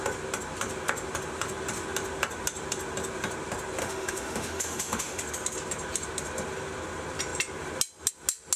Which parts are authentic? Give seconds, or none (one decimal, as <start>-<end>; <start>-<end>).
0.0-3.8; 5.2-8.6